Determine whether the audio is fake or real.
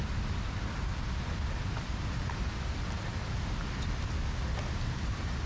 real